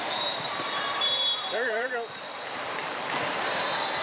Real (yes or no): no